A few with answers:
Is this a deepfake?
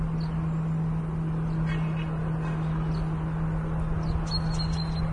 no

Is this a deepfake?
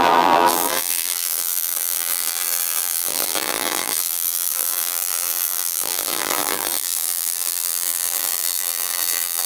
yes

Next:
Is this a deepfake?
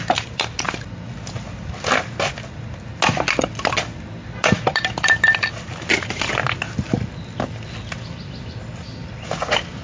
no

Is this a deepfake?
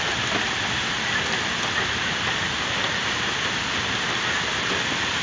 no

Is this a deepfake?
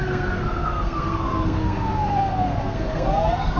yes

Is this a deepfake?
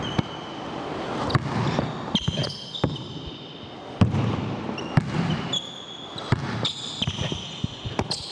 no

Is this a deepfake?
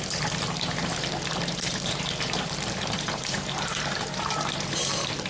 yes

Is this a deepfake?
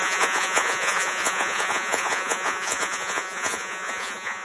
yes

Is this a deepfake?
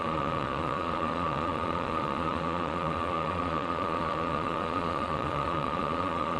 yes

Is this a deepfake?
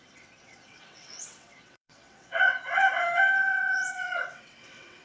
yes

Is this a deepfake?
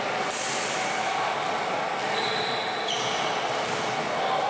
no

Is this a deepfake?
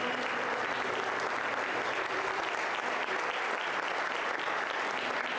no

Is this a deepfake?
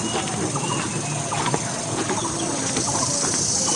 no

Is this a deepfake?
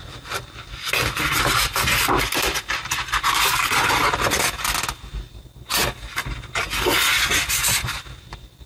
no